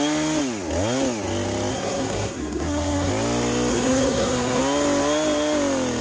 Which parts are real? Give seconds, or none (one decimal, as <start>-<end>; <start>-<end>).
0.0-1.7; 3.1-3.7; 4.6-6.0